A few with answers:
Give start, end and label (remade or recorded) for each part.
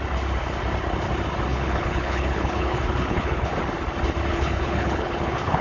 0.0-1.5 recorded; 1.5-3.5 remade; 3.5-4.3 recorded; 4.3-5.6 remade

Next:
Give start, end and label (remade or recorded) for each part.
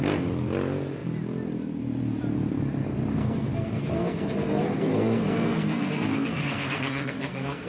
0.0-3.1 recorded; 3.1-7.7 remade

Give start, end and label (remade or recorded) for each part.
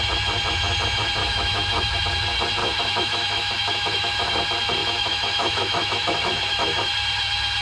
0.0-1.2 recorded; 1.2-2.0 remade; 2.0-2.6 recorded; 2.6-4.3 remade; 4.3-4.8 recorded; 4.8-6.9 remade; 6.9-7.6 recorded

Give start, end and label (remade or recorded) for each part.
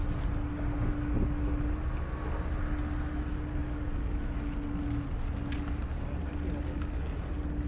0.0-7.7 recorded